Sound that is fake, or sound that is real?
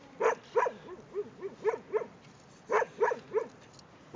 real